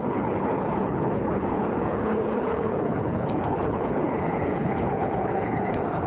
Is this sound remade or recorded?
remade